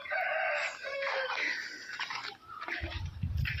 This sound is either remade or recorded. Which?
remade